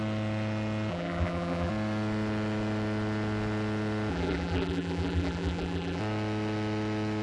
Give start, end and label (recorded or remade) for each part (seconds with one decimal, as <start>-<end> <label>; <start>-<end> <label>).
0.0-0.9 recorded; 0.9-1.7 remade; 1.7-4.1 recorded; 4.1-6.0 remade; 6.0-7.2 recorded